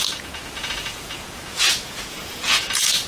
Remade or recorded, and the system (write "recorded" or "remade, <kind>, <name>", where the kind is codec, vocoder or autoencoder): remade, vocoder, Vocos